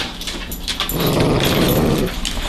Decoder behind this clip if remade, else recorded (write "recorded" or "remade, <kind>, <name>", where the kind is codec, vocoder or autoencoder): recorded